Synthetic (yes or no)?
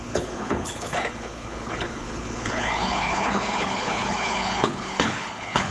yes